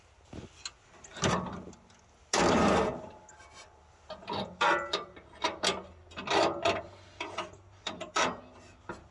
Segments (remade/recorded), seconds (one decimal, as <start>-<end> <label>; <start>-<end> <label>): 0.0-9.1 recorded